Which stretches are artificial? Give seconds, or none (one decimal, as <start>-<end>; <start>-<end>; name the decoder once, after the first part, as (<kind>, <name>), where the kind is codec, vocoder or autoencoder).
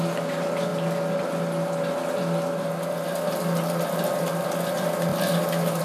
none